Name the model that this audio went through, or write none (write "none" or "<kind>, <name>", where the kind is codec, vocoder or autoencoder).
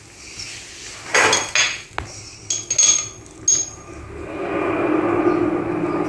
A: none